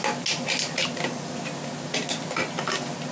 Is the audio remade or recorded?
recorded